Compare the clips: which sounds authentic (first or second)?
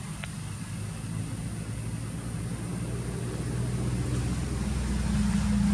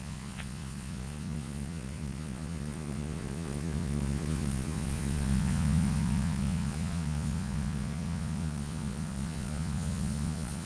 first